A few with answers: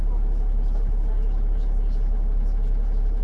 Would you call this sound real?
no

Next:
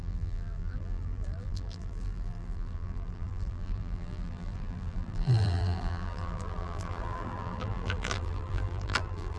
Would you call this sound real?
no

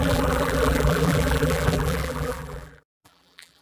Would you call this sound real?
no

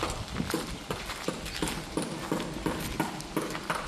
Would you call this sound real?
yes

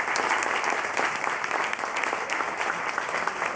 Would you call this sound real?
yes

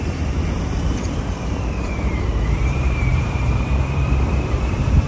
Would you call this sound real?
no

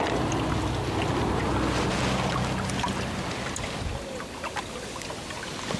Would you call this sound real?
yes